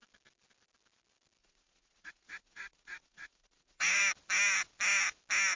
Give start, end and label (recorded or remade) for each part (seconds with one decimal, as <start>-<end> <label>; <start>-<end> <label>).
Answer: 0.0-1.4 recorded; 1.4-4.0 remade; 4.0-5.6 recorded

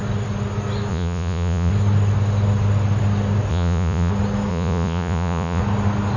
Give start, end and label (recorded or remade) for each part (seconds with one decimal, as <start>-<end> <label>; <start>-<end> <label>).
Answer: 0.0-0.9 recorded; 0.9-1.7 remade; 1.7-3.5 recorded; 3.5-4.1 remade; 4.1-4.5 recorded; 4.5-5.6 remade; 5.6-6.2 recorded

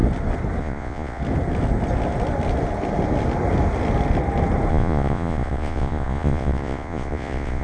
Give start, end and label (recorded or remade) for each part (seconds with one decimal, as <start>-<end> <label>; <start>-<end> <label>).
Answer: 0.0-0.6 recorded; 0.6-1.2 remade; 1.2-4.7 recorded; 4.7-7.6 remade